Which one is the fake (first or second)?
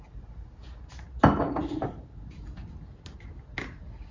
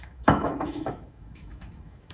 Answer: second